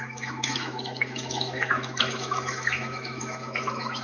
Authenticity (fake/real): fake